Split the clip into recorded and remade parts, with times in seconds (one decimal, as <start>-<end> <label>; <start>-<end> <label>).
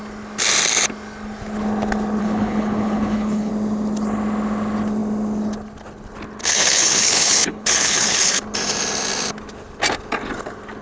0.0-2.2 recorded; 2.2-3.5 remade; 3.5-6.4 recorded; 6.4-8.4 remade; 8.4-10.8 recorded